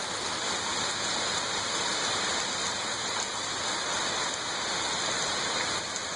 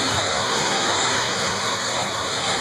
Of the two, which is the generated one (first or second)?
second